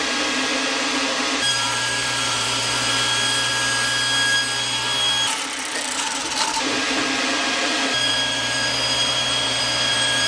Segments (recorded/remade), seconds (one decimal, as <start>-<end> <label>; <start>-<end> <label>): 0.0-3.5 remade; 3.5-5.3 recorded; 5.3-10.3 remade